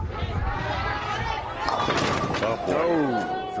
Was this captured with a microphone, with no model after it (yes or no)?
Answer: yes